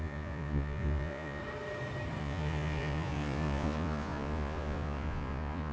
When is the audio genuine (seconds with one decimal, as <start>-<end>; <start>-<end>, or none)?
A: 1.4-2.2